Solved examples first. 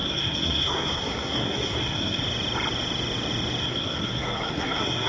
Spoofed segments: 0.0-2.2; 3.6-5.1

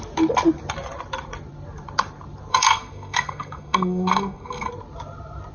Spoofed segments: 2.5-4.7

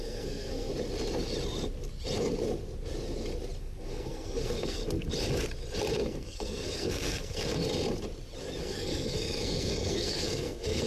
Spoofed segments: 0.0-0.7; 3.6-4.8; 5.9-7.6; 8.6-10.9

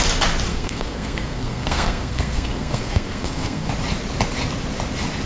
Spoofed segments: 0.5-3.7

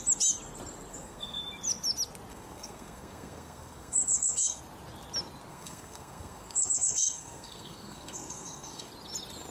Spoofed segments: 0.9-1.4; 2.3-4.6; 5.5-8.9

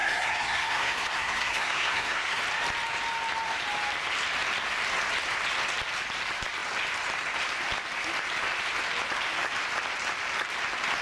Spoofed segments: 0.0-2.4

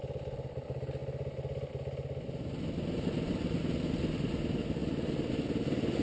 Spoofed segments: none